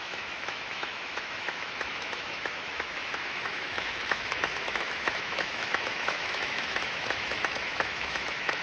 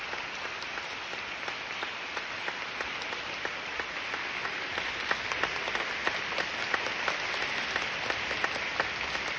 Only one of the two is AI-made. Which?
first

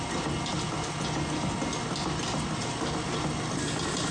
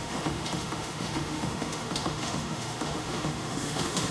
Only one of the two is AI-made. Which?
second